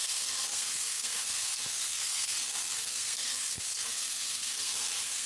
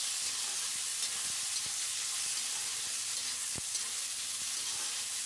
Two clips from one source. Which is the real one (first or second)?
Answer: second